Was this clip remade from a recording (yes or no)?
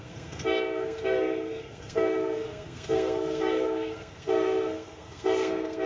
yes